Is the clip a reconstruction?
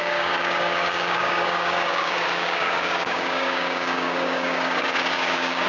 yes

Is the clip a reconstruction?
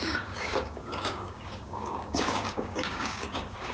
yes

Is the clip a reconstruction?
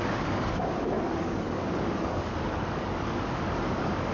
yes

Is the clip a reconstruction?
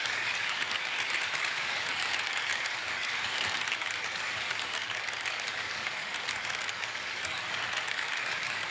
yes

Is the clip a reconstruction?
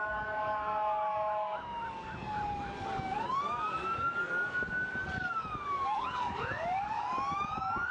yes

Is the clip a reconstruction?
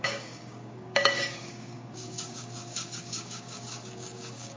yes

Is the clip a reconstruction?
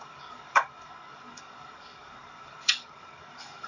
yes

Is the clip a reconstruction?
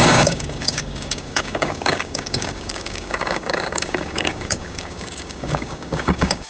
yes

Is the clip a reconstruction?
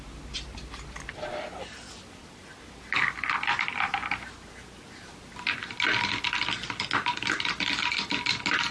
no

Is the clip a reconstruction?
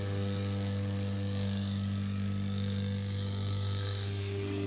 yes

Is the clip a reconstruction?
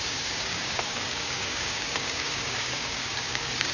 yes